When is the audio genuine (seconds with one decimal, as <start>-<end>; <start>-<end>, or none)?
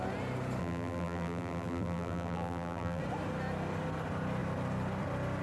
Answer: 0.0-0.6; 3.0-5.4